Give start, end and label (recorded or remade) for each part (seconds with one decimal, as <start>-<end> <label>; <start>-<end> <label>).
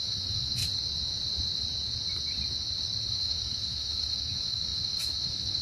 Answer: 0.0-0.6 remade; 0.6-3.1 recorded; 3.1-5.6 remade